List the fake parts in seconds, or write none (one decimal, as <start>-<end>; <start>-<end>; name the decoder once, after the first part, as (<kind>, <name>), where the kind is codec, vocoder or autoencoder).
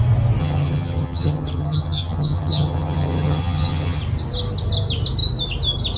0.4-4.0 (vocoder, HiFi-GAN)